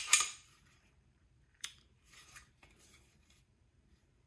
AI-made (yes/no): yes